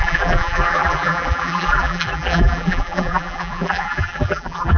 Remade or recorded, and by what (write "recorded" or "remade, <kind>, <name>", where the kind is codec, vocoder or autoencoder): remade, vocoder, BigVGAN v2